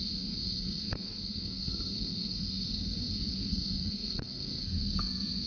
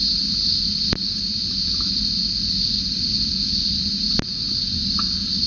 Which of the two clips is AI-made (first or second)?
first